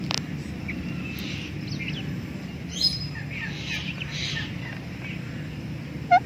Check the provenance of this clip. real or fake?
real